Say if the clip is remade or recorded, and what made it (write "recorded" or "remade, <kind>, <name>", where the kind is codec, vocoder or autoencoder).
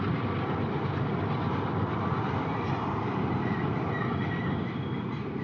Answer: recorded